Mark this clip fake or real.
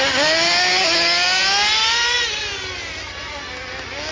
real